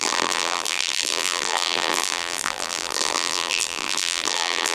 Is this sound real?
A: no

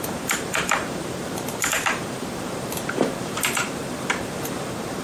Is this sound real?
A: no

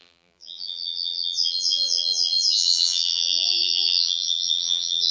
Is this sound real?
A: no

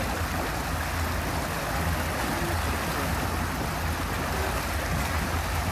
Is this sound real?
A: yes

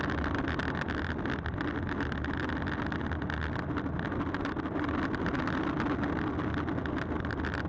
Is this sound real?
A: yes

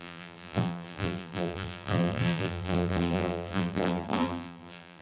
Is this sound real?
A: no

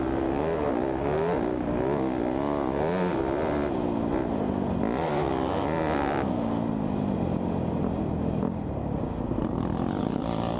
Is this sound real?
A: yes